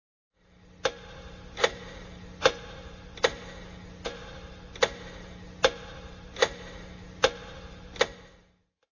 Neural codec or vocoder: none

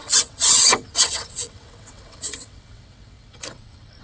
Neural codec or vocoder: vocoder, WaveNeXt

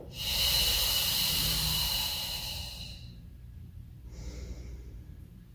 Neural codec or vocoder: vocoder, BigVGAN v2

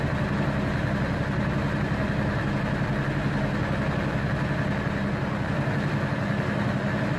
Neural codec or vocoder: none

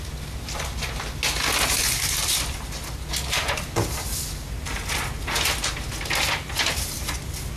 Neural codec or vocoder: none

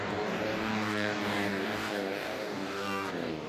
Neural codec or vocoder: codec, DAC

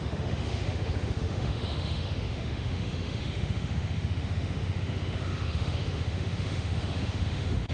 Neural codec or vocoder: autoencoder, DAC-VAE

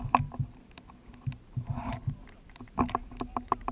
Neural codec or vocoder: none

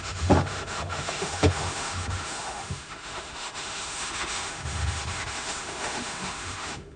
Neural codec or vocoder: autoencoder, DAC-VAE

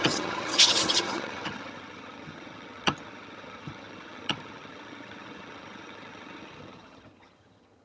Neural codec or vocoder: vocoder, HiFi-GAN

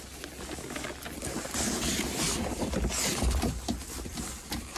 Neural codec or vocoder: none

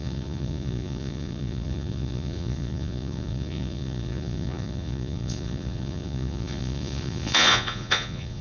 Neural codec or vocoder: vocoder, Vocos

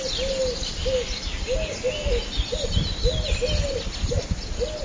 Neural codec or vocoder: none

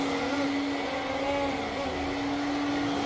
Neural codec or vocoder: none